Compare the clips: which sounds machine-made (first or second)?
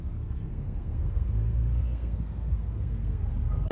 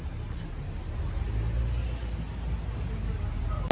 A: first